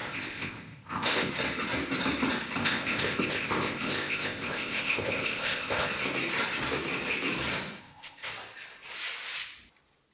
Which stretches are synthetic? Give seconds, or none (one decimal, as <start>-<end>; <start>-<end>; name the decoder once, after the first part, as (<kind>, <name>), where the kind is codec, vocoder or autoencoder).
0.0-1.3 (codec, ZipCodec); 2.6-5.9; 7.8-8.3